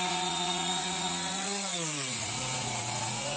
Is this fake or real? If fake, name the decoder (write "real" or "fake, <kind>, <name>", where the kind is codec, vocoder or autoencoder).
fake, vocoder, Vocos